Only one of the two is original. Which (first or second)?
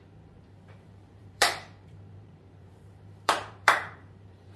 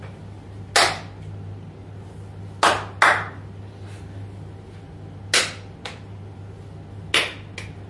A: second